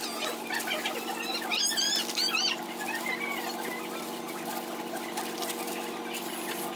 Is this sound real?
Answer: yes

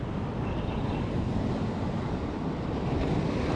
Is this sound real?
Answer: yes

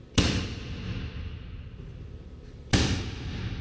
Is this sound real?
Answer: yes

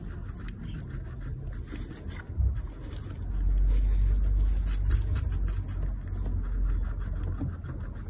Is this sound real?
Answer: yes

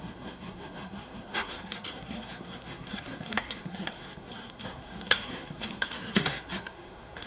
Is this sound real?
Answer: no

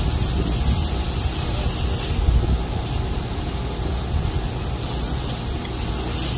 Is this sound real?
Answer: yes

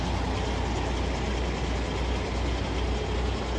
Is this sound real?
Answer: yes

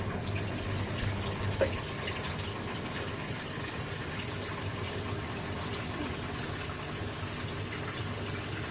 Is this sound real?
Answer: yes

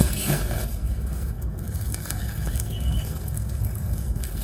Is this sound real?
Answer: no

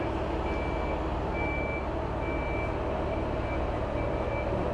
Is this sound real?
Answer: yes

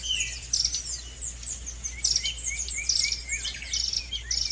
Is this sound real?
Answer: yes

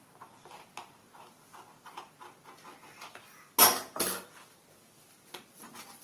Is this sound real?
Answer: yes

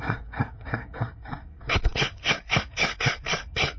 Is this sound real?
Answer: no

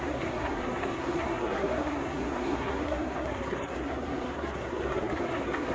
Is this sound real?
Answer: no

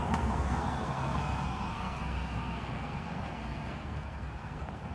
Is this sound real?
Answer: no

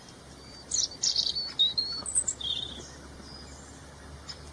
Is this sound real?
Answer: yes